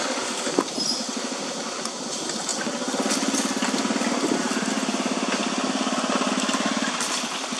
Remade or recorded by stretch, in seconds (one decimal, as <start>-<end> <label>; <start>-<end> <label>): 0.0-7.6 recorded